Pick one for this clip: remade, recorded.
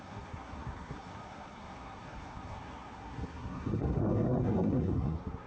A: remade